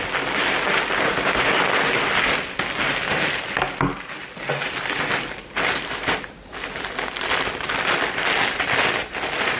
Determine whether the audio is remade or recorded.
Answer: recorded